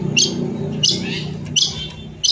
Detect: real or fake real